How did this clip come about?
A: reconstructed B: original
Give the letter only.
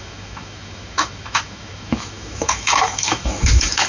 A